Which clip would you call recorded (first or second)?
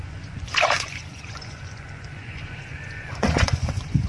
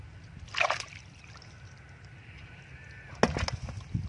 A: second